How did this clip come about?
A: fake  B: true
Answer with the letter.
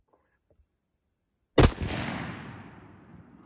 B